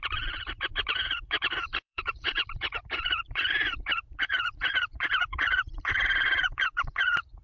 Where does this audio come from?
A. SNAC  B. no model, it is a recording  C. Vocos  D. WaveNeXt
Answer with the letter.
C